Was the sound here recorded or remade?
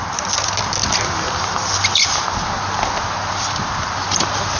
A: recorded